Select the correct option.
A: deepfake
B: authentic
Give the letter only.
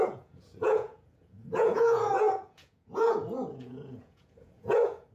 A